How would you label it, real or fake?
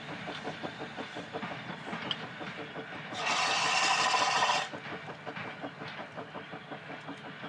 real